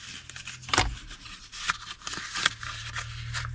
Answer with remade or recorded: recorded